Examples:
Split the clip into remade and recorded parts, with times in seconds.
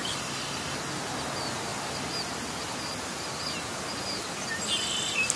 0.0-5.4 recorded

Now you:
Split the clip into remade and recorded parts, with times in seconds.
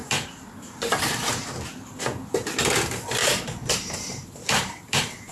0.0-1.9 remade; 1.9-3.2 recorded; 3.2-5.3 remade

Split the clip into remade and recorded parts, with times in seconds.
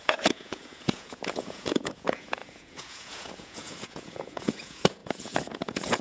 0.0-6.0 remade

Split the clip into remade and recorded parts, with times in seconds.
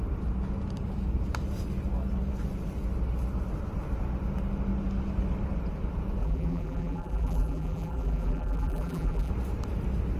0.0-6.2 recorded; 6.2-9.3 remade; 9.3-10.2 recorded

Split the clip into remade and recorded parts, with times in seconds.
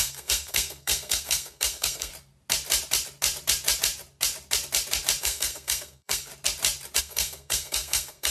0.0-2.1 remade; 2.1-5.2 recorded; 5.2-6.3 remade; 6.3-7.0 recorded; 7.0-8.3 remade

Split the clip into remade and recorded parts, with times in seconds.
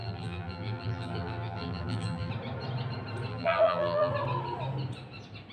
0.0-2.3 remade; 2.3-3.3 recorded; 3.3-4.1 remade; 4.1-5.5 recorded